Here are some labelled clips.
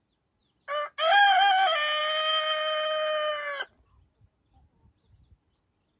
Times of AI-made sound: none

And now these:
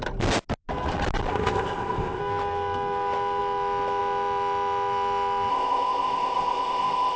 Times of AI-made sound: 1.3-2.2; 5.5-7.2

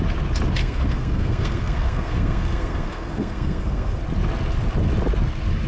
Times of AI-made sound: 0.6-4.0

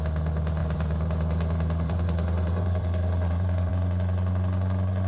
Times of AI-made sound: 0.6-3.7

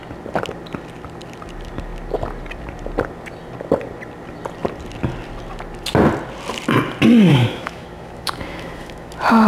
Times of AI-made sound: 7.3-9.1

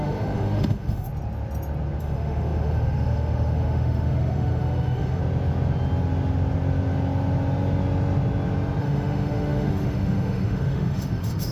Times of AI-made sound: 0.0-1.1; 2.0-5.2; 8.8-11.5

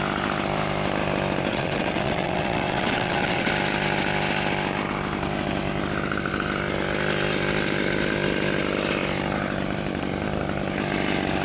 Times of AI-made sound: 1.5-3.5

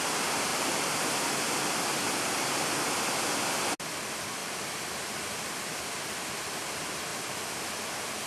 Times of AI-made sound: 0.5-1.1; 4.4-6.2; 7.1-7.7